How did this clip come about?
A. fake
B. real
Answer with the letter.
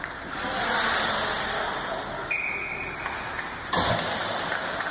B